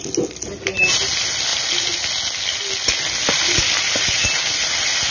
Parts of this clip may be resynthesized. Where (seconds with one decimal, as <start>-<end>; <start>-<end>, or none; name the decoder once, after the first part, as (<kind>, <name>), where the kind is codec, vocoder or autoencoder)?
none